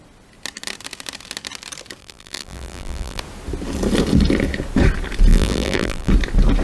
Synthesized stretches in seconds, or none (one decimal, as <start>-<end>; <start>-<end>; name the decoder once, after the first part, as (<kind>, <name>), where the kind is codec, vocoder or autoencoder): 2.0-3.2 (vocoder, BigVGAN v2); 5.3-6.1